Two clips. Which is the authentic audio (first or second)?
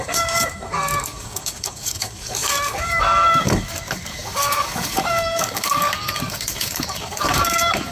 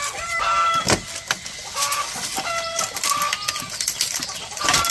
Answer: second